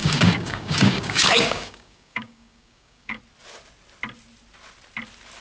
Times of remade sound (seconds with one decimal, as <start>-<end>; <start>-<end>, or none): 0.0-3.2